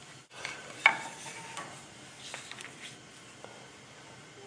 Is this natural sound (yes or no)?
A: yes